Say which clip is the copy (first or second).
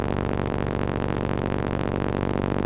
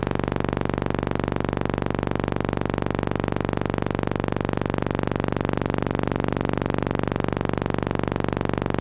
first